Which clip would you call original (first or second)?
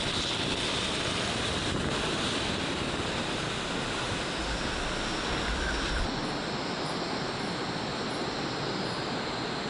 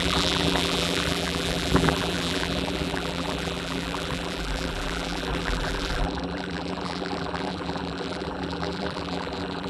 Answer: first